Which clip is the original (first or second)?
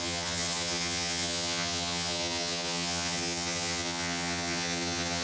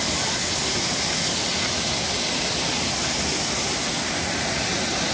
second